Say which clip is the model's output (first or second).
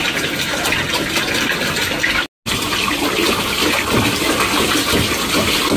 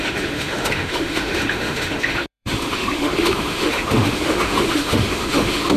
second